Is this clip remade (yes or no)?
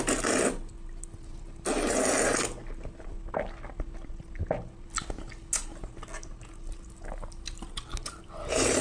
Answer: no